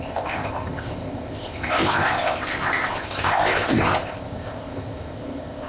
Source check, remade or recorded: remade